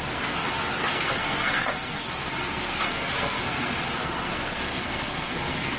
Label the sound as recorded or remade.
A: remade